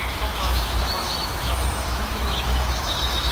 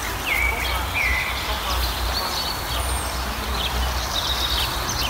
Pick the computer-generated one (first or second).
first